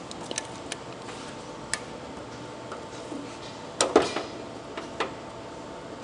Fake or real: real